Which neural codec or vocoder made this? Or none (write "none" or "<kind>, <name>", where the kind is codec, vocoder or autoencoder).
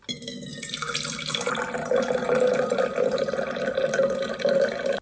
none